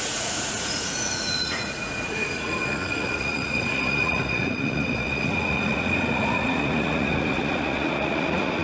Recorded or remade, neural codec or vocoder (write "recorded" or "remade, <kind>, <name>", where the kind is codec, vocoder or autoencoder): remade, vocoder, Vocos